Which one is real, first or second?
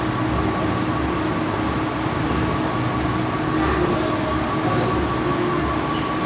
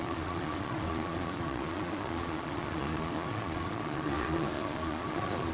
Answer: first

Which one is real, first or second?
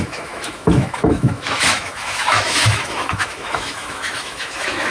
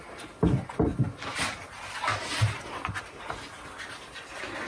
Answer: second